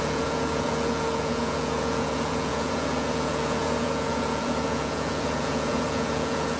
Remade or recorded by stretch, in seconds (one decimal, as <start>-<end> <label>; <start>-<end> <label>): 0.0-6.6 remade